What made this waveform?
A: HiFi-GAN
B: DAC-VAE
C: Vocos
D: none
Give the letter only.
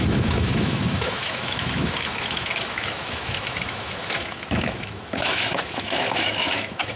B